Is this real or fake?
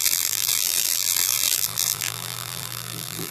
fake